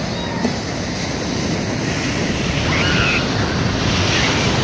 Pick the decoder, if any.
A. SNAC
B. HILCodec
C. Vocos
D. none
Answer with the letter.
D